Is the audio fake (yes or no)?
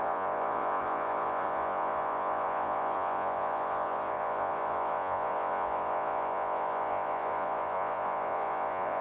yes